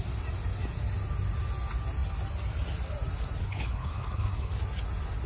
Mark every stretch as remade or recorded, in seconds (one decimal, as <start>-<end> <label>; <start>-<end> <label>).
0.0-3.4 recorded; 3.4-4.5 remade; 4.5-5.3 recorded